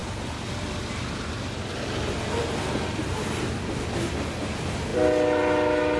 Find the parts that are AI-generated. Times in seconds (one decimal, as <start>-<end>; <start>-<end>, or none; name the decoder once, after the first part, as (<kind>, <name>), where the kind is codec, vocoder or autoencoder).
none